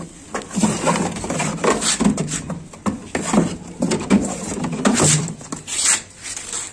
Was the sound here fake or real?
real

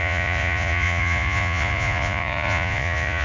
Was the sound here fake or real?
fake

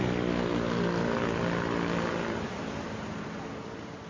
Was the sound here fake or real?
real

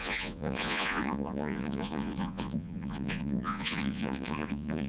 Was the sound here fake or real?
fake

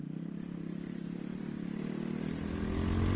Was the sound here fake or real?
real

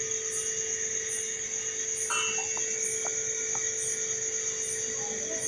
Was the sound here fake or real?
real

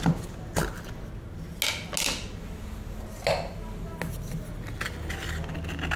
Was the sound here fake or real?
real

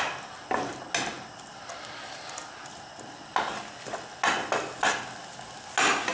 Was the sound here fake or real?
real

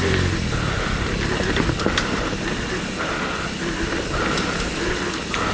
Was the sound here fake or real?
real